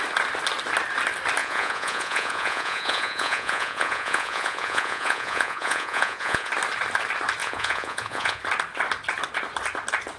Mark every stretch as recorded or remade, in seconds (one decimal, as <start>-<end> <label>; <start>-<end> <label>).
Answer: 0.0-1.4 recorded; 1.4-6.5 remade; 6.5-7.4 recorded; 7.4-8.4 remade; 8.4-10.2 recorded